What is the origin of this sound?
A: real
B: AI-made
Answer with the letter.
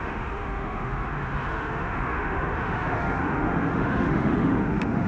B